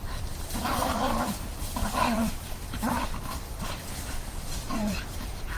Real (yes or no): no